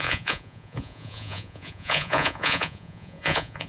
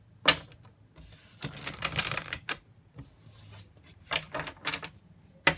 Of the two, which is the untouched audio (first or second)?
second